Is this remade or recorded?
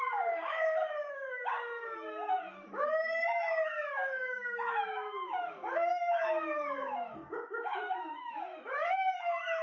remade